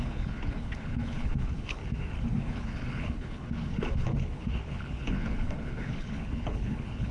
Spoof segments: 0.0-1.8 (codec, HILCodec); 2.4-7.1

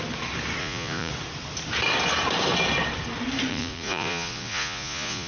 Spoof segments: 0.6-1.1 (vocoder, Vocos); 3.5-5.3

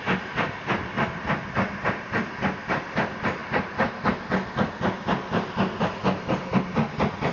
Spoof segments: none

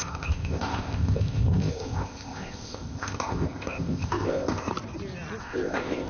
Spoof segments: 0.0-4.7 (codec, ZipCodec); 5.4-6.1

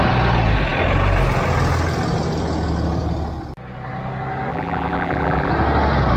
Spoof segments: 4.5-5.5 (vocoder, BigVGAN v2)